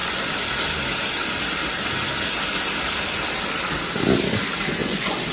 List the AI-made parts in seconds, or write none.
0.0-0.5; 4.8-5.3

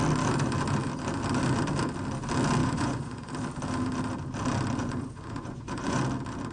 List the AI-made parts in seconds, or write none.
2.6-3.3; 4.8-6.0